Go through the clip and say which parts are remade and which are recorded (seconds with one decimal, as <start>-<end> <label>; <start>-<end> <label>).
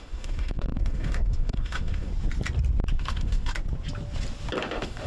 0.0-2.1 remade; 2.1-3.0 recorded; 3.0-3.5 remade; 3.5-4.6 recorded; 4.6-5.1 remade